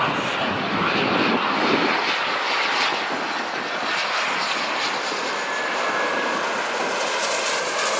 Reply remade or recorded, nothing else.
recorded